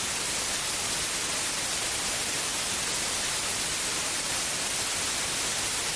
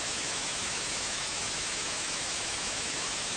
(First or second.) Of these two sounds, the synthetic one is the second